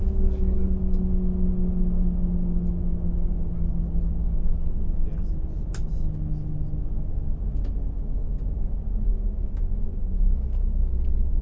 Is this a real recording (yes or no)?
yes